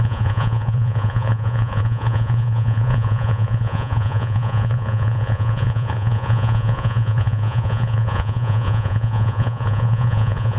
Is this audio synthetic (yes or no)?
yes